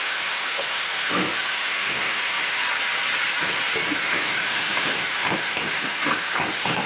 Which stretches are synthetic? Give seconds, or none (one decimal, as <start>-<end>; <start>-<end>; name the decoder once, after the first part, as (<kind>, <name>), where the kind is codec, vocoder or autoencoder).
0.0-2.6 (autoencoder, DAC-VAE); 3.9-6.9